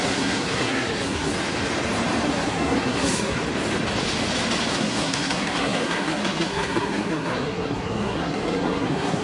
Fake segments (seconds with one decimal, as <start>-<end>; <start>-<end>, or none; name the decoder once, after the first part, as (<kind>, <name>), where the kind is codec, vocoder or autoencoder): 0.0-1.3 (codec, SNAC); 2.3-3.4; 4.7-9.2